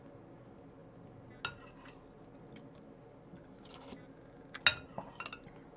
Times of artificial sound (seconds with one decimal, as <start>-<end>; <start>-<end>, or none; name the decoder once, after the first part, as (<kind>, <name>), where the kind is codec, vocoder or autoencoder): none

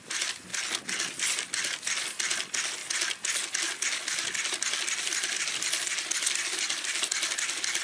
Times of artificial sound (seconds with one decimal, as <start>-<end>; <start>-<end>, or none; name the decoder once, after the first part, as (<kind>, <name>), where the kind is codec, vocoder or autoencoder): none

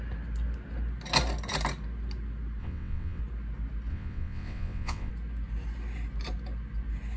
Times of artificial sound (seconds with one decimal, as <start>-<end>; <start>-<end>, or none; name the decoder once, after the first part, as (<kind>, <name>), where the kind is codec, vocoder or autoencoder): 2.6-3.2 (vocoder, WaveNeXt); 3.9-5.1